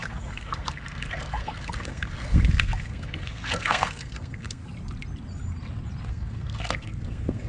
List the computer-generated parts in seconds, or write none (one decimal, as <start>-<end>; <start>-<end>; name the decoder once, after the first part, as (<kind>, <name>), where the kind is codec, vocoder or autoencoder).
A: 0.0-4.6 (codec, SNAC); 6.1-7.5